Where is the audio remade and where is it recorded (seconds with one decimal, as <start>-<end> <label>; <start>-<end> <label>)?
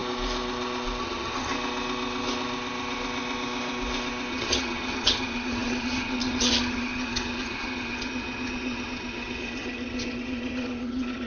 0.0-1.0 recorded; 1.0-1.5 remade; 1.5-4.3 recorded; 4.3-11.3 remade